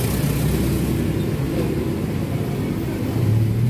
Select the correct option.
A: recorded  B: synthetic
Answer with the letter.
A